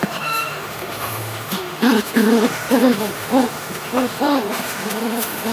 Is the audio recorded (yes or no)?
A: no